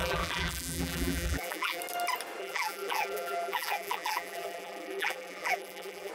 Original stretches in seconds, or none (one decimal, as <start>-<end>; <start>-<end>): 1.8-2.4